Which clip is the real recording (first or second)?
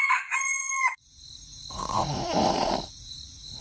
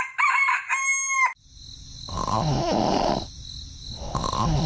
second